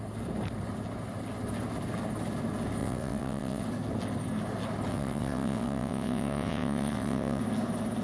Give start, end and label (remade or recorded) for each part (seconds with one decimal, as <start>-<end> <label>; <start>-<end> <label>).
0.0-2.8 recorded; 2.8-3.6 remade; 3.6-4.9 recorded; 4.9-7.4 remade; 7.4-8.0 recorded